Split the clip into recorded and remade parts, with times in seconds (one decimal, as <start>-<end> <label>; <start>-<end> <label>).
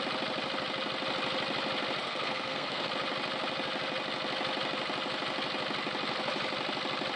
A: 0.0-2.0 recorded; 2.0-2.9 remade; 2.9-7.2 recorded